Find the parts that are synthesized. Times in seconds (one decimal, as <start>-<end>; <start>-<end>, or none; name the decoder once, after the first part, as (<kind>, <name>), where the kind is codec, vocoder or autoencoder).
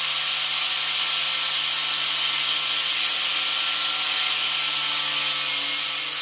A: none